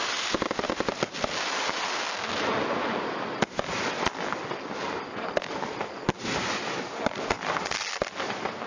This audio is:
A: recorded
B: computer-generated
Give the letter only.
A